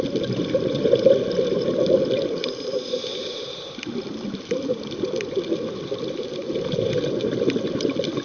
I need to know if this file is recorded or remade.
recorded